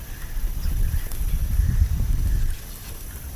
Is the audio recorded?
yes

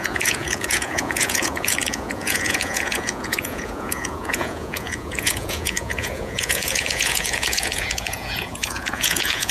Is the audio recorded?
no